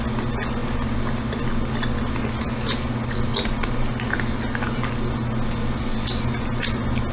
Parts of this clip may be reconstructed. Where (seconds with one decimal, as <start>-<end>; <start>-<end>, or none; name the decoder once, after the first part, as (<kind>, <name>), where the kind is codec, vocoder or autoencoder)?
none